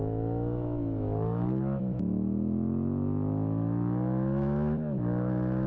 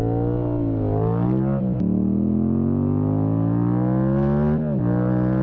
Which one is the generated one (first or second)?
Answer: first